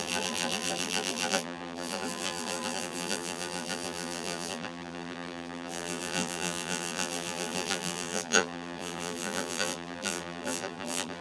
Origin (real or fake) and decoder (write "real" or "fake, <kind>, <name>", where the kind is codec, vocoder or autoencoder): fake, vocoder, BigVGAN v2